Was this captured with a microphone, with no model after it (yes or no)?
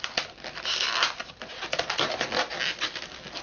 yes